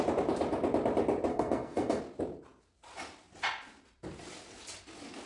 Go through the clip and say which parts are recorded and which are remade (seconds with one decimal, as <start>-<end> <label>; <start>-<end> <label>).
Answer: 0.0-1.3 recorded; 1.3-2.0 remade; 2.0-5.3 recorded